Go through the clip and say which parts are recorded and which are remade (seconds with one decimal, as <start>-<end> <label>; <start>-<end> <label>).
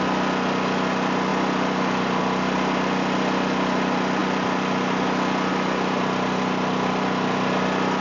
0.0-8.0 recorded